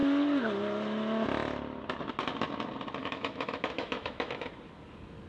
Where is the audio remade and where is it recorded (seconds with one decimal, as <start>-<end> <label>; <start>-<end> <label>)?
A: 0.0-3.0 recorded; 3.0-4.5 remade; 4.5-5.3 recorded